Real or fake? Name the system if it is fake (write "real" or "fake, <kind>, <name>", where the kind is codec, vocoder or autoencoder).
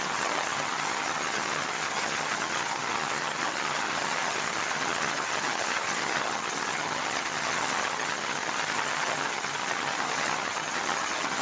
fake, vocoder, HiFi-GAN